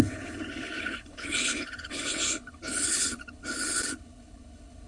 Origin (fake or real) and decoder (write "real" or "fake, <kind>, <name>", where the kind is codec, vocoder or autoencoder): fake, codec, HILCodec